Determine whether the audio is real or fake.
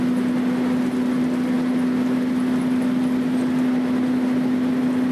real